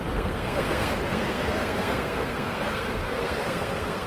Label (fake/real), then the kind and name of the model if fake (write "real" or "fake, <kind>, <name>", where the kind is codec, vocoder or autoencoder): fake, codec, SNAC